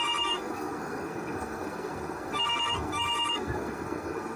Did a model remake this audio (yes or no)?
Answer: yes